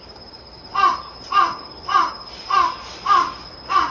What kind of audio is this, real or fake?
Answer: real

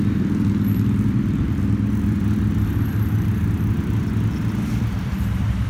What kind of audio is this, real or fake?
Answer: fake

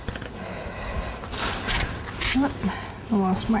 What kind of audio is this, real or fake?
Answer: real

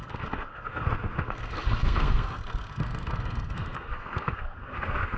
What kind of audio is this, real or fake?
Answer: fake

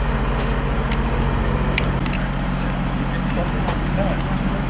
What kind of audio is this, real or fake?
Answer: real